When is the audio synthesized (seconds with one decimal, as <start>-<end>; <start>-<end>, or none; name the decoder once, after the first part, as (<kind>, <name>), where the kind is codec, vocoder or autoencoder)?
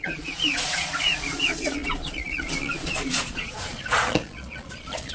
0.0-5.1 (vocoder, Vocos)